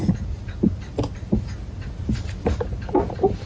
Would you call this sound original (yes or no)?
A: yes